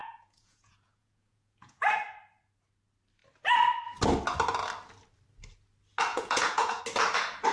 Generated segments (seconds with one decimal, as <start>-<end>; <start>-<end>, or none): 0.0-1.9; 6.1-6.8

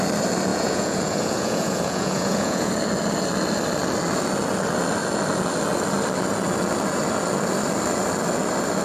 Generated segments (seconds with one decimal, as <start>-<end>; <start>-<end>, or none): 0.5-2.7

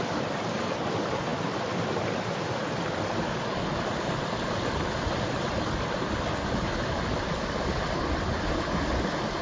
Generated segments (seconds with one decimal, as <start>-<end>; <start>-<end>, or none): none

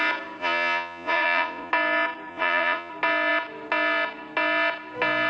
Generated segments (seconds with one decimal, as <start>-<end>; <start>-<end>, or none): 0.4-1.7; 2.3-2.9

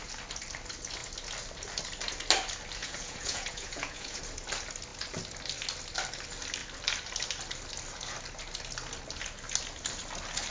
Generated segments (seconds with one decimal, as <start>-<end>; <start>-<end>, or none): 2.8-4.2

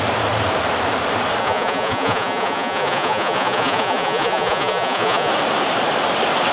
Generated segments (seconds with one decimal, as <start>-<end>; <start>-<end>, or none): 1.4-5.3

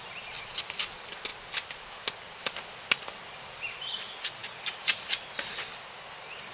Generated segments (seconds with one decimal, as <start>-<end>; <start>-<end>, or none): none

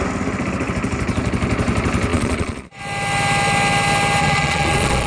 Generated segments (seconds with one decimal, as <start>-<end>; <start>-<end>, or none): 2.1-2.8; 4.2-5.1